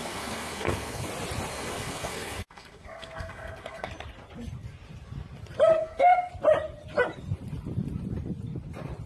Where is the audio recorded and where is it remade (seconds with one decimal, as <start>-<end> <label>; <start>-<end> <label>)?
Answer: 0.0-1.1 remade; 1.1-1.5 recorded; 1.5-3.9 remade; 3.9-5.8 recorded; 5.8-6.3 remade; 6.3-9.1 recorded